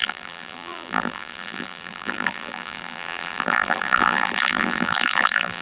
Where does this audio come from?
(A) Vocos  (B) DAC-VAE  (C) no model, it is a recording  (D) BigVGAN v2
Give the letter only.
D